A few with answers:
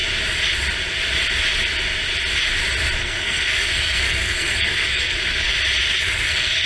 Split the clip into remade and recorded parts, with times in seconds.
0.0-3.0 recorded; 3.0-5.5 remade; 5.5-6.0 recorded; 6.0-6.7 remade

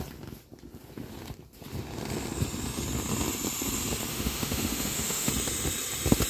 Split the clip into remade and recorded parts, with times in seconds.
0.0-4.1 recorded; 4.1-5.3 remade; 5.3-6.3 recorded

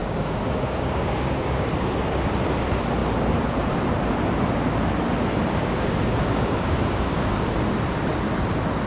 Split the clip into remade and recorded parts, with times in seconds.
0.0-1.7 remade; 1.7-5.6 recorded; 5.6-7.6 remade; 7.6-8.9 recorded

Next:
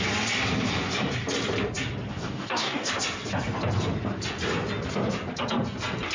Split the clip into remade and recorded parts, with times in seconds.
0.0-2.1 recorded; 2.1-2.9 remade; 2.9-6.1 recorded

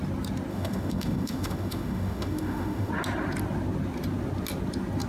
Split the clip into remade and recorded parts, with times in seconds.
0.0-0.5 recorded; 0.5-2.9 remade; 2.9-5.1 recorded

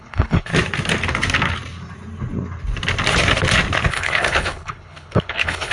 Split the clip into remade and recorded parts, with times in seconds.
0.0-0.5 remade; 0.5-3.9 recorded; 3.9-5.7 remade

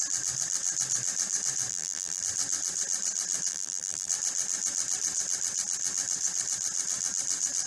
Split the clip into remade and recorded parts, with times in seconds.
0.0-1.7 recorded; 1.7-2.2 remade; 2.2-3.5 recorded; 3.5-4.1 remade; 4.1-7.7 recorded